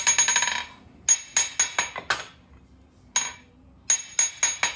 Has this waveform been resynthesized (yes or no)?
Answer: no